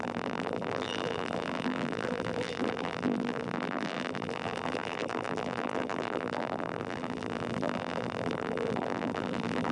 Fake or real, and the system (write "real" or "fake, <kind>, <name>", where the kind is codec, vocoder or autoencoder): fake, vocoder, BigVGAN v2